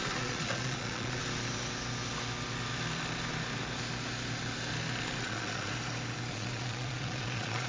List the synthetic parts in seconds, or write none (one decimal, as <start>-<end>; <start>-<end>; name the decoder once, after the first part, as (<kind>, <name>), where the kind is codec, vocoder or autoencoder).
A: 0.0-1.2 (vocoder, Vocos); 5.2-5.7; 6.3-7.7